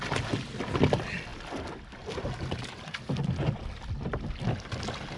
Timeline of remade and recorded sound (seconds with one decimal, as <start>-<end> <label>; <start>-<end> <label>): 0.0-5.2 recorded